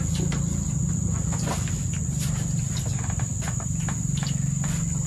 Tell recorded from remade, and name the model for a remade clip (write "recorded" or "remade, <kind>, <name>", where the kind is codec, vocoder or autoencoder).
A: recorded